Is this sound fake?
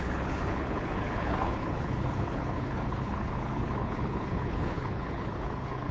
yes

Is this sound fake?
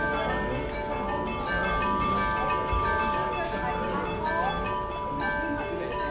no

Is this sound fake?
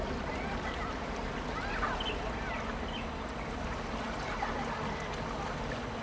no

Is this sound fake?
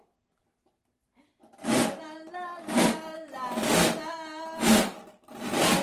no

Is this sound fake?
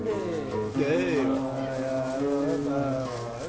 no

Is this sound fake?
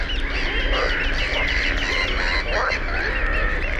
no